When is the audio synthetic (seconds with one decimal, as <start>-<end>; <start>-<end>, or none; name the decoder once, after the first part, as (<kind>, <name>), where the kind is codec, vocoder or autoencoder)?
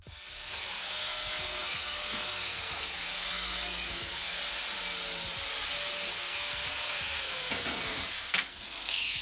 0.0-4.4 (codec, SNAC); 6.1-9.2